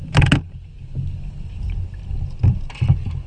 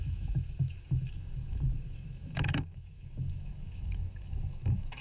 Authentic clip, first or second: first